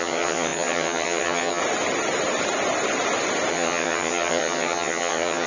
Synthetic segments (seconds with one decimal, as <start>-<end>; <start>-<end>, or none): 0.0-1.6; 3.5-5.5